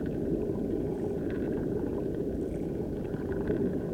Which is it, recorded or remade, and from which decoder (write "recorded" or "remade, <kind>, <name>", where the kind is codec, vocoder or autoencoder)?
remade, vocoder, Vocos